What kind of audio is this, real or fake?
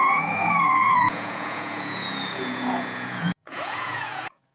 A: fake